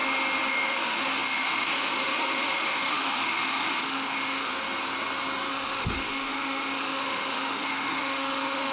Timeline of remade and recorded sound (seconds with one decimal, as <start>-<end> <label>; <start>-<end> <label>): 0.0-0.5 recorded; 0.5-4.5 remade; 4.5-5.5 recorded; 5.5-8.7 remade